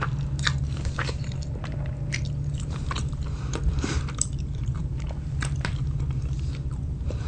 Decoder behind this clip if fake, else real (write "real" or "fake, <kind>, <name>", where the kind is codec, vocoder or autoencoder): fake, vocoder, BigVGAN v2